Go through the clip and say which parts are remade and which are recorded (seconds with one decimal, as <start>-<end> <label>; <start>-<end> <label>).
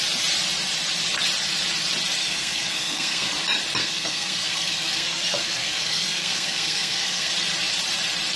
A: 0.0-2.2 recorded; 2.2-3.3 remade; 3.3-3.8 recorded; 3.8-7.3 remade; 7.3-8.4 recorded